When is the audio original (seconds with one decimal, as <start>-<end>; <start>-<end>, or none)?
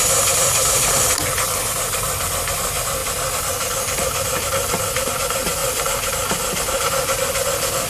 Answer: 0.0-7.9